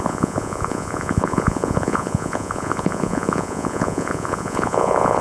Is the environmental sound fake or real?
fake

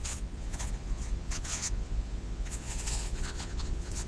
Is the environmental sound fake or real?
fake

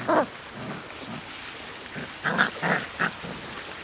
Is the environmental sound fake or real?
real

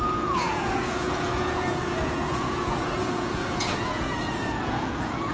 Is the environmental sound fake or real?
fake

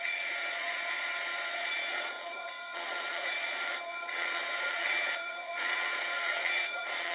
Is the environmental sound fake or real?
fake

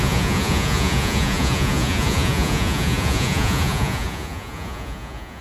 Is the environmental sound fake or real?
fake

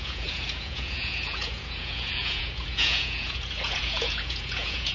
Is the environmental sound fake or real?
fake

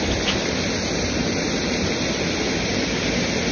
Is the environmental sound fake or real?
real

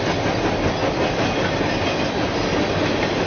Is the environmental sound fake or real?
real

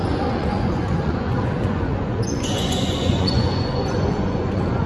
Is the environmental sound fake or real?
fake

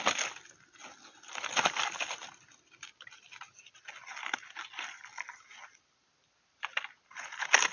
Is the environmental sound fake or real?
real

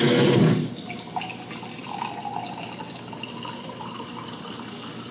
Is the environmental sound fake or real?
real